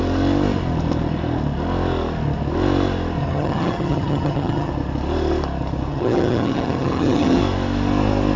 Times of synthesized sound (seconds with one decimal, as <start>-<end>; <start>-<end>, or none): 3.2-4.7; 5.9-7.4